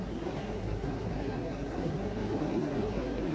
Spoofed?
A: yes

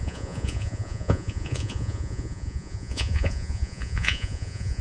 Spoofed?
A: yes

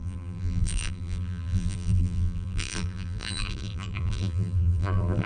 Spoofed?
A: yes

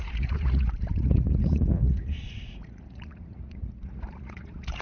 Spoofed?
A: yes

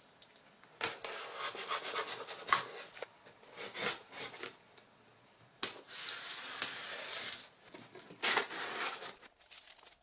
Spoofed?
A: no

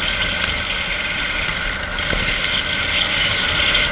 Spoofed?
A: no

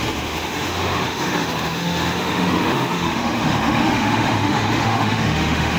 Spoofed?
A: yes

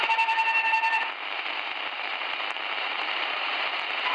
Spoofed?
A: yes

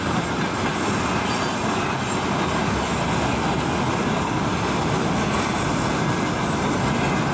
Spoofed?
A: no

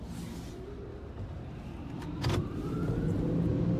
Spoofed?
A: no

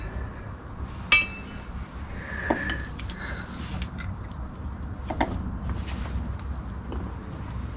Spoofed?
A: no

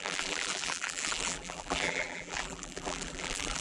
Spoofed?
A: yes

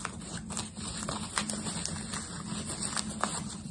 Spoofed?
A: no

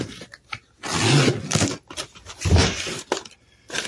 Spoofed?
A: no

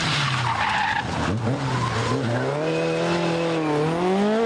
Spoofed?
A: no